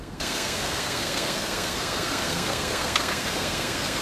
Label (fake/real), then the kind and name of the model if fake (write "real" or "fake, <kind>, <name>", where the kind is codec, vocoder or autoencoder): fake, codec, SNAC